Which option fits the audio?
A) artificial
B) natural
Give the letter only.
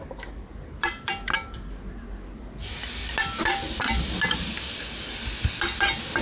B